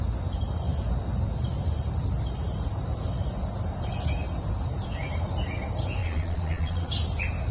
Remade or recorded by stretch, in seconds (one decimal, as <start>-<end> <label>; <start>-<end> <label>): 0.0-6.0 recorded; 6.0-6.9 remade; 6.9-7.5 recorded